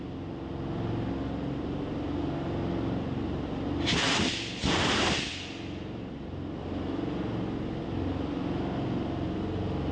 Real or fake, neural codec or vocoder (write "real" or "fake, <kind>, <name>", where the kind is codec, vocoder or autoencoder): real